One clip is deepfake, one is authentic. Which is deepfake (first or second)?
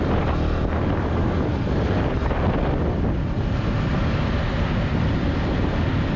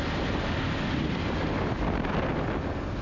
first